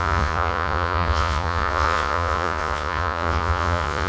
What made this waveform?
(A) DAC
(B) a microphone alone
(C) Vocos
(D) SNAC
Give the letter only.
C